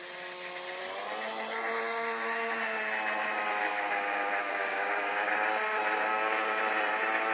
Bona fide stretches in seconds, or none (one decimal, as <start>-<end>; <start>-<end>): 0.0-3.6; 5.3-6.1; 6.6-7.3